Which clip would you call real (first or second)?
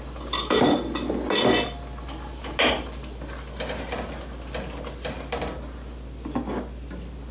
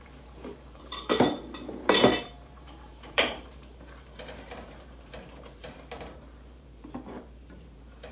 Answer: first